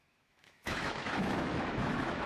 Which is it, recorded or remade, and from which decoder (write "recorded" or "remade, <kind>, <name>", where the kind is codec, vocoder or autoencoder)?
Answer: remade, autoencoder, DAC-VAE